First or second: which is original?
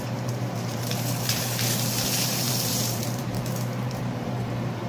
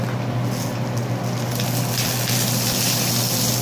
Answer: second